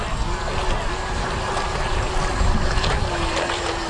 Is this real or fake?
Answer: real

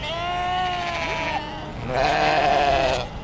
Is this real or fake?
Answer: real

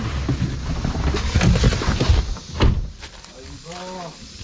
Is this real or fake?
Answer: real